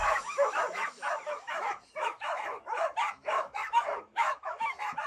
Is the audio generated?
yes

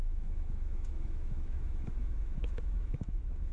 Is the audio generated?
yes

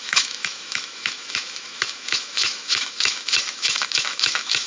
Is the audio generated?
yes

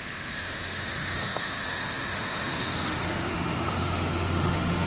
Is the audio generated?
yes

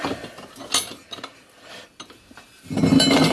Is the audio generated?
no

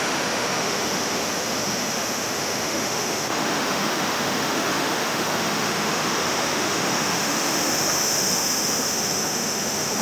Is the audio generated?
yes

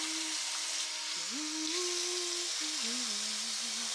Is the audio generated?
no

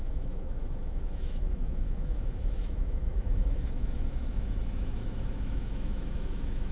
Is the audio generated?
yes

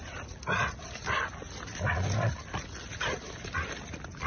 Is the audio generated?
no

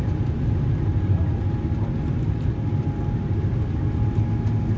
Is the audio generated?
no